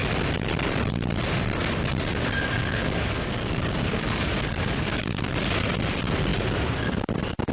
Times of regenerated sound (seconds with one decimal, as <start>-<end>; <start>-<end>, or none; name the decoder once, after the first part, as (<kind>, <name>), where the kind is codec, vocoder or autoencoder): 2.6-5.3 (codec, DAC)